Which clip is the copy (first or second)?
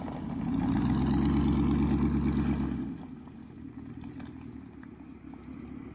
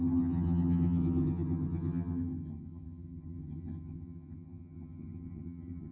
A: second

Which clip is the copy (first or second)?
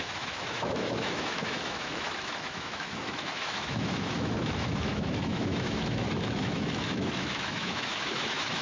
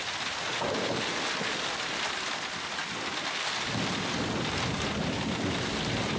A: first